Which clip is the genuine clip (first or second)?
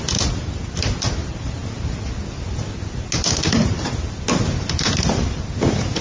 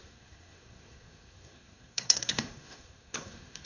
first